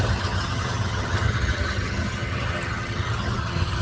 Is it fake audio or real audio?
fake